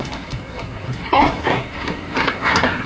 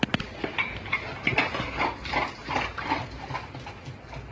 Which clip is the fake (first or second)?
first